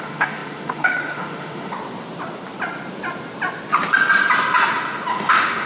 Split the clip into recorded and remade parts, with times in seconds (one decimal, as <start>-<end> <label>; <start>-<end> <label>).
0.0-1.7 remade; 1.7-5.1 recorded; 5.1-5.7 remade